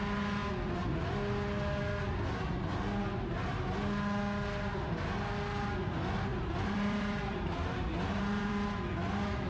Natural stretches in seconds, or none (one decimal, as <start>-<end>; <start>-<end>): 0.0-6.3; 8.5-9.5